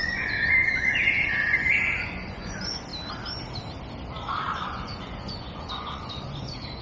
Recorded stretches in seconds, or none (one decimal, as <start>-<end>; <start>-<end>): 2.9-4.4